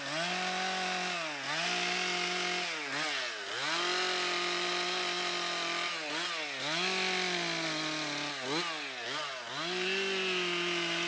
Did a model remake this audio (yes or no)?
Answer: no